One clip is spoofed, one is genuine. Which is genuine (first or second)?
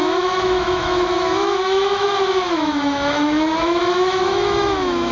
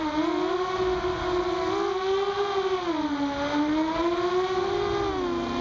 second